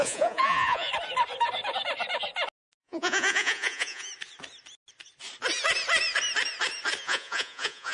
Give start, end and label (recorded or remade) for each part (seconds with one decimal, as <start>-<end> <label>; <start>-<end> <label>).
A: 0.0-0.9 remade; 0.9-2.8 recorded; 2.8-4.1 remade; 4.1-7.0 recorded; 7.0-7.9 remade